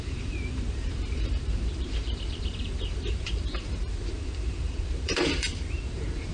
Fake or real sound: fake